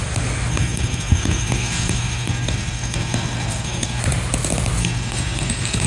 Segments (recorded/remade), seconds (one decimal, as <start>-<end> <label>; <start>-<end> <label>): 0.0-0.5 recorded; 0.5-4.0 remade; 4.0-4.8 recorded; 4.8-5.9 remade